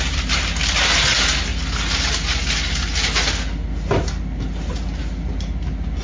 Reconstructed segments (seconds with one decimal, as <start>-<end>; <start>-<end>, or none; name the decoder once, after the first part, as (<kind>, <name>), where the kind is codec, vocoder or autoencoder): none